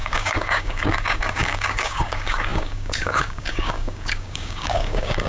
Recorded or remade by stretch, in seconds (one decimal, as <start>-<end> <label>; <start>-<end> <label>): 0.0-5.3 remade